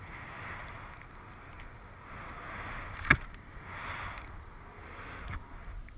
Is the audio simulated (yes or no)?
no